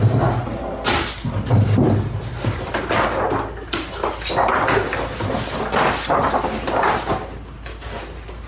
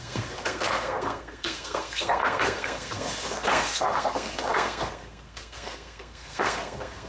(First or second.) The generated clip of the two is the second